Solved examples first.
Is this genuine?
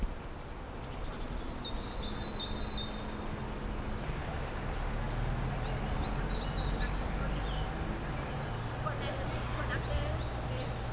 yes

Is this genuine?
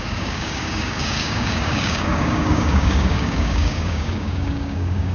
no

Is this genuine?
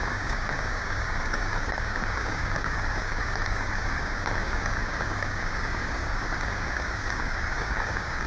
no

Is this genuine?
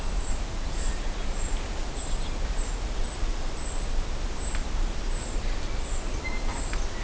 yes